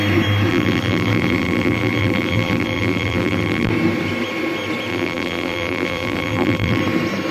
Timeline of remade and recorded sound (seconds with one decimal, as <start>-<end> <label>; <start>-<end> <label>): 0.0-0.5 recorded; 0.5-3.7 remade; 3.7-4.9 recorded; 4.9-6.8 remade; 6.8-7.3 recorded